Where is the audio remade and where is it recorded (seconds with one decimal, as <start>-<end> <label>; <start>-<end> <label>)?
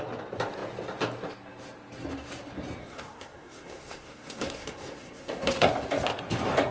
0.0-2.8 recorded; 2.8-5.7 remade; 5.7-6.7 recorded